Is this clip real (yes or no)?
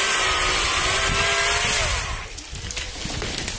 yes